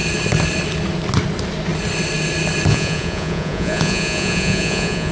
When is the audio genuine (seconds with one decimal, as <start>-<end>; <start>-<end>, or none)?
0.0-2.7